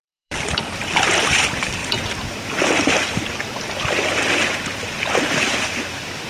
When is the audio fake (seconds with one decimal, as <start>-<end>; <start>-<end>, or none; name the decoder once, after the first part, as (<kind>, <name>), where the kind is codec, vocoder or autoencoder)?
0.0-6.3 (vocoder, BigVGAN v2)